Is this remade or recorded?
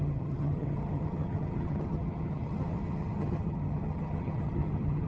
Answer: remade